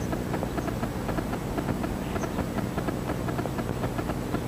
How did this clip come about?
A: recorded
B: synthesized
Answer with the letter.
A